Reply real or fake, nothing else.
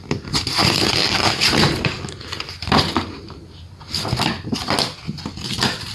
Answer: real